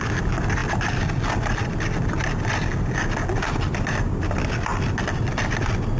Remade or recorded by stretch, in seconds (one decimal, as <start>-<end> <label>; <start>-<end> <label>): 0.0-6.0 recorded